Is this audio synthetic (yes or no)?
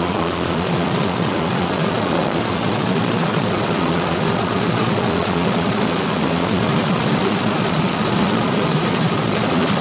yes